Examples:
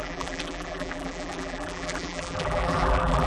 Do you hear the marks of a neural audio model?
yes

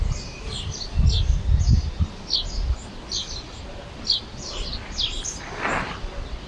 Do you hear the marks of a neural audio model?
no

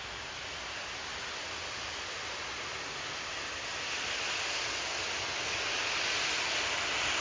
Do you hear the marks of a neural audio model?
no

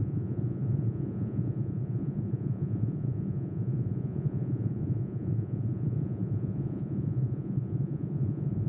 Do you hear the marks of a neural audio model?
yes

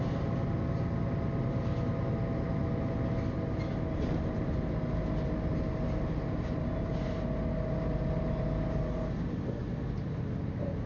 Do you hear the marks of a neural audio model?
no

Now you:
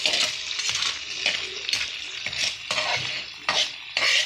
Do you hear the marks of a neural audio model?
no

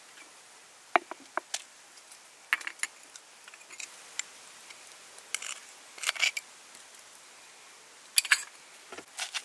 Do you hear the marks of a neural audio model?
no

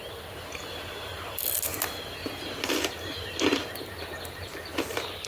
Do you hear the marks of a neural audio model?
no